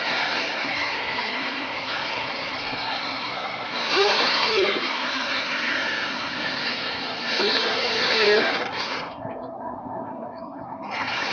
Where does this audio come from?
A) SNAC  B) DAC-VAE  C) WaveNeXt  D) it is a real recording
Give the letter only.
A